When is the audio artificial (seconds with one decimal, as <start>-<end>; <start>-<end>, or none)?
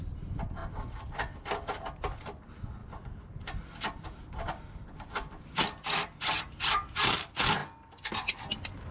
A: none